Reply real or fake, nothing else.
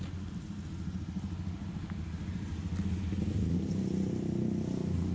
real